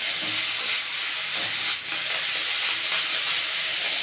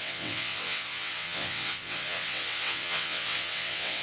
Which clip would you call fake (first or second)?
second